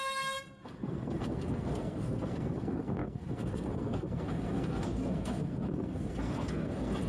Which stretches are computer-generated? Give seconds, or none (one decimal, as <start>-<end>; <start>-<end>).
0.0-7.1